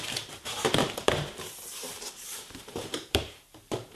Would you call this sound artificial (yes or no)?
yes